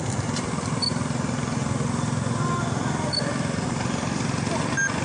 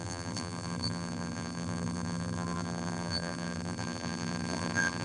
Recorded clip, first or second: first